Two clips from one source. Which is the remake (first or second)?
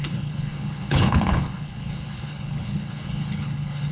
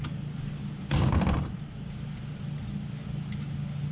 first